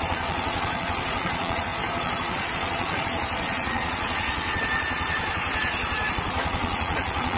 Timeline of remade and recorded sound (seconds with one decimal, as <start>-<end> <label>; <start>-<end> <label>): 0.0-7.4 remade